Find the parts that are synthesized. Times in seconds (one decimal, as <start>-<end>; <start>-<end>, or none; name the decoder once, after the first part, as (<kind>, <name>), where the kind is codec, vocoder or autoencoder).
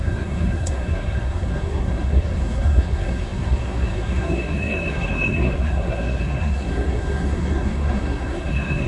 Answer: 0.0-8.9 (codec, SNAC)